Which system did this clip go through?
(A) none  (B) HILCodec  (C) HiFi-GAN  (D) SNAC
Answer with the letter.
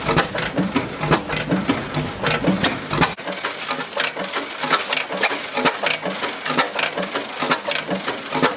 A